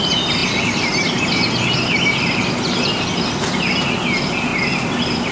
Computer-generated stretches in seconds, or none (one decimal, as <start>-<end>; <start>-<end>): none